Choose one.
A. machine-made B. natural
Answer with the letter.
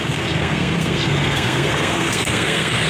A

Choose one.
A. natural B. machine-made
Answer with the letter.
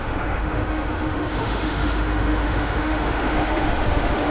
B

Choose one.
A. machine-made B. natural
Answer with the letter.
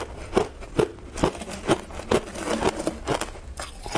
B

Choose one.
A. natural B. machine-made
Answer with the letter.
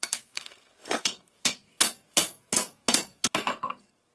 B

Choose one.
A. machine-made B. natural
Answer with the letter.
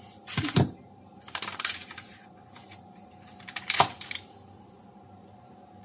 A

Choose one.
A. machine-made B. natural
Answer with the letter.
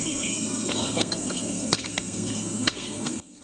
A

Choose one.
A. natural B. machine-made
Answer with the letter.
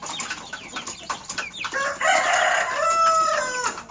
A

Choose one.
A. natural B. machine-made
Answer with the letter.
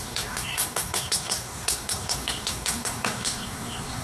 B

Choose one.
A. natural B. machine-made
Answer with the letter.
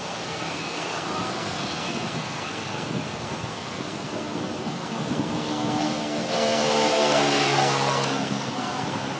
B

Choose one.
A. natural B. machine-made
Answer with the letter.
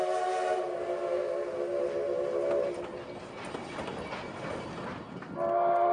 A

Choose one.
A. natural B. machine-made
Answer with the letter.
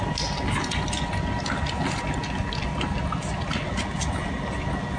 A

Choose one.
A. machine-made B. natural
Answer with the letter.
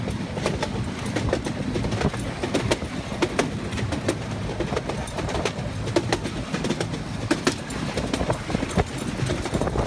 B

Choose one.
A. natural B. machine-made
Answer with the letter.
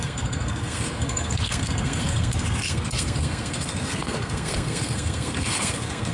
B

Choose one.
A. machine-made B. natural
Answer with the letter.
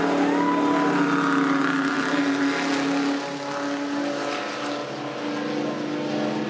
B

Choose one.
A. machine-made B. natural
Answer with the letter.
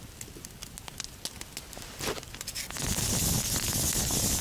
B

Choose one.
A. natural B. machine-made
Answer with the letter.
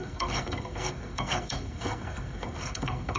B